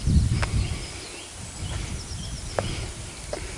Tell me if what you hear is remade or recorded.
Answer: recorded